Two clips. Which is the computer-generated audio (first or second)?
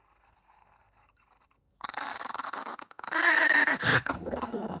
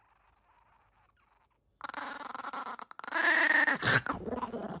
first